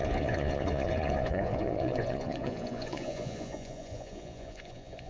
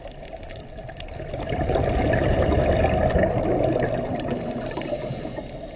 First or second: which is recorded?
second